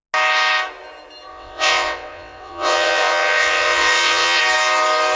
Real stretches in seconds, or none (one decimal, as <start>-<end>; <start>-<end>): 0.0-1.3; 4.4-5.2